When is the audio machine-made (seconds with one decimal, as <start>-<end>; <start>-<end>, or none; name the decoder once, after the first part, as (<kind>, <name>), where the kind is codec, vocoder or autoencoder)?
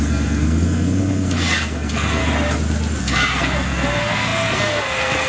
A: 0.0-2.2 (codec, SNAC); 3.0-5.3